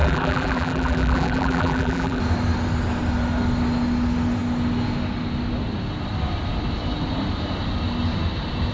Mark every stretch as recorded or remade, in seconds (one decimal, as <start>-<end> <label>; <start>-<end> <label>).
0.0-2.2 remade; 2.2-8.7 recorded